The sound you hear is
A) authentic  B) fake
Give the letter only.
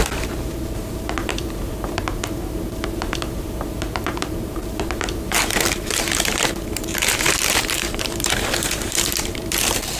B